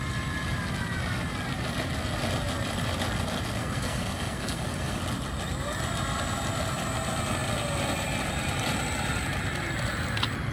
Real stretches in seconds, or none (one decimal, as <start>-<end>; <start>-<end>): 0.0-3.6; 5.0-10.5

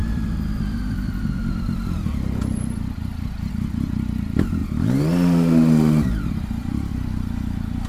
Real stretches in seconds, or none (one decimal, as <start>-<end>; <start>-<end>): 0.0-7.9

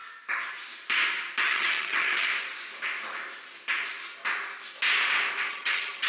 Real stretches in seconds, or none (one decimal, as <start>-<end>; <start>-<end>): 0.0-1.4; 2.3-5.5

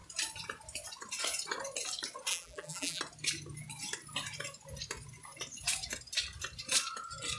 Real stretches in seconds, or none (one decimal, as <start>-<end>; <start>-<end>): 0.0-2.3; 3.0-7.4

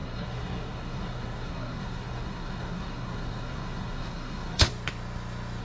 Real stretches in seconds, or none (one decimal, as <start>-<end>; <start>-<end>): 4.7-5.6

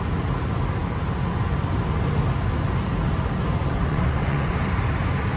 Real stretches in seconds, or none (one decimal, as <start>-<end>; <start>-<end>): 0.0-3.6; 4.5-5.4

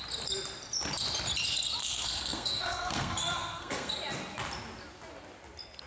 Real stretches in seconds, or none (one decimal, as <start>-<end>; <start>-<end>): 0.0-1.8; 3.9-5.9

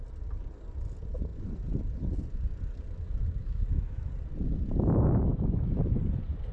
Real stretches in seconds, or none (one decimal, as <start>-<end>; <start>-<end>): 0.0-3.4; 4.1-5.3; 5.8-6.5